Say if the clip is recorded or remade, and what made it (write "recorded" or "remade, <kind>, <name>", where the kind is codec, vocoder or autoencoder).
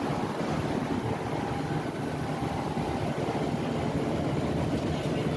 recorded